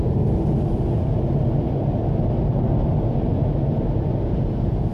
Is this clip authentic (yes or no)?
yes